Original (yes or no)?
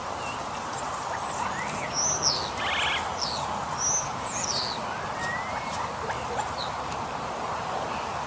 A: yes